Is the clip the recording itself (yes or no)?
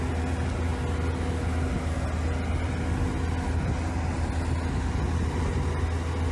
yes